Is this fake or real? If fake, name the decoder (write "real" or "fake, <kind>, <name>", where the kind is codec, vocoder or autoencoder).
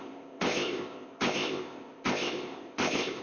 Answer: fake, codec, ZipCodec